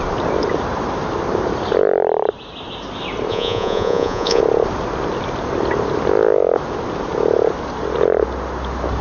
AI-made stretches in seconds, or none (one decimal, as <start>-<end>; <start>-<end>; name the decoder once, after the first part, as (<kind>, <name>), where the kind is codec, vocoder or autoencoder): 3.3-4.4 (vocoder, Vocos)